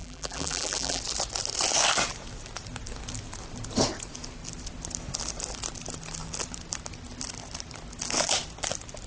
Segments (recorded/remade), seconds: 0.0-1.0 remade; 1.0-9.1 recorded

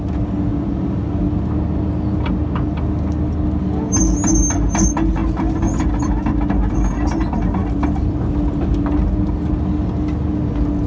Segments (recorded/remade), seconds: 0.0-7.6 recorded; 7.6-8.3 remade; 8.3-10.9 recorded

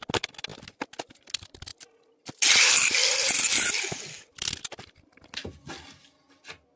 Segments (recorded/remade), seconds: 0.0-6.8 recorded

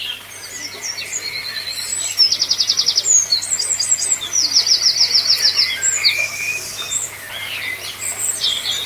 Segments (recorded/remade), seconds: 0.0-6.0 recorded; 6.0-7.3 remade; 7.3-8.9 recorded

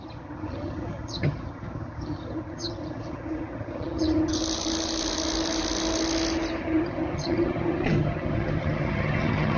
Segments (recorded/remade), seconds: 0.0-4.4 remade; 4.4-6.6 recorded; 6.6-9.6 remade